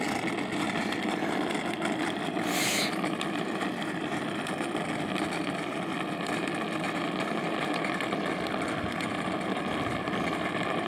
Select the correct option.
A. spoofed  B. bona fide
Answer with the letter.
A